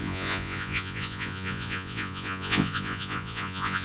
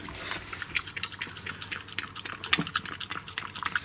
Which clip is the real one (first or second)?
second